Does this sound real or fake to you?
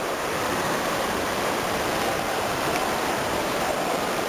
fake